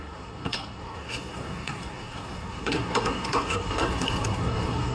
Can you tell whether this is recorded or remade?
remade